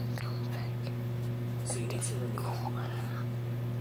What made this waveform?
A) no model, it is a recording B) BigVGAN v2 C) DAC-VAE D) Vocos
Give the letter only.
A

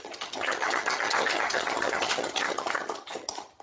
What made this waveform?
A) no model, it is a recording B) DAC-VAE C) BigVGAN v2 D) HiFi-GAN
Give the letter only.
D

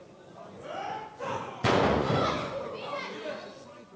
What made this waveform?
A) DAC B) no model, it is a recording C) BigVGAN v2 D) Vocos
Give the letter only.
D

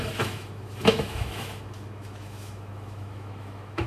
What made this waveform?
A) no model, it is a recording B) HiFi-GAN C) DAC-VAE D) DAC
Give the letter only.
C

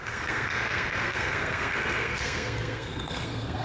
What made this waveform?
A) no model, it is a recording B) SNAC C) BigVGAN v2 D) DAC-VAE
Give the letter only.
B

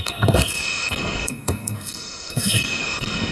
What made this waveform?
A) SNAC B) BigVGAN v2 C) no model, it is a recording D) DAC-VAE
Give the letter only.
A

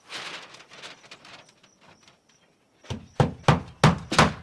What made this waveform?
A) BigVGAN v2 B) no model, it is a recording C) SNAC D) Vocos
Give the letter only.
B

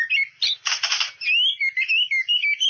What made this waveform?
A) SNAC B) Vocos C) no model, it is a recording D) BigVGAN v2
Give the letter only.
C